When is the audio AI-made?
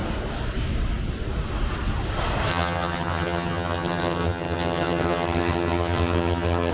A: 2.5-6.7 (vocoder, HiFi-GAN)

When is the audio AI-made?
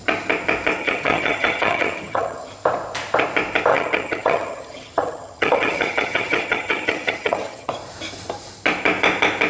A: 0.8-2.5 (vocoder, HiFi-GAN); 3.7-7.7